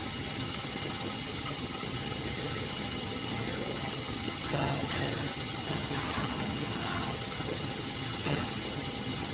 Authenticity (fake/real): fake